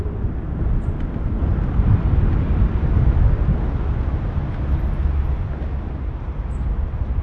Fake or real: real